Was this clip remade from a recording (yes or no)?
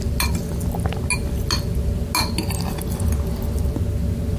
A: no